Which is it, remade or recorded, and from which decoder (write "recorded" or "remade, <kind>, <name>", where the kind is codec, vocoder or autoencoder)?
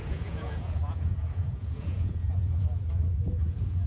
remade, vocoder, Vocos